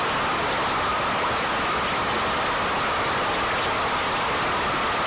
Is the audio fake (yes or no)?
no